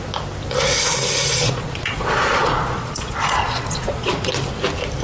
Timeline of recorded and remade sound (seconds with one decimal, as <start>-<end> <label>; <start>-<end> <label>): 0.0-1.3 recorded; 1.3-4.3 remade; 4.3-5.0 recorded